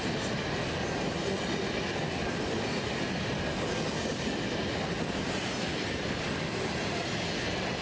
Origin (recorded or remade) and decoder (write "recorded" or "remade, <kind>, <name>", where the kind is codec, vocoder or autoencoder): recorded